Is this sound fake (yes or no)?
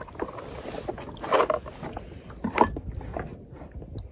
no